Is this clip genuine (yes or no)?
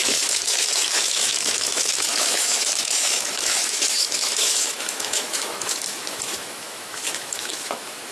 no